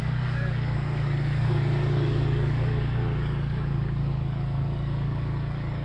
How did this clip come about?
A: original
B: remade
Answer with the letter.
B